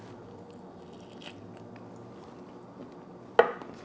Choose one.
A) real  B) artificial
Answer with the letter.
A